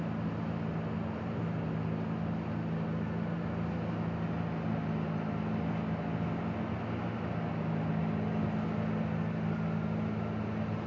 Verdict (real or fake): real